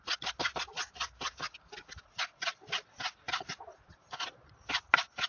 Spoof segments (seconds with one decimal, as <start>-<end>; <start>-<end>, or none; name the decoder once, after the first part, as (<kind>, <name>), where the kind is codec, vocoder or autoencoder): 3.7-4.5 (vocoder, Vocos)